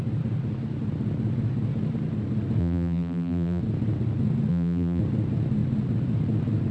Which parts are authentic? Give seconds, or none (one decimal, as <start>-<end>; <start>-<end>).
0.0-2.6; 3.6-4.5; 5.0-6.7